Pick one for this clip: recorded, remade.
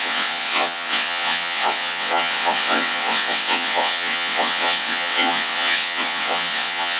remade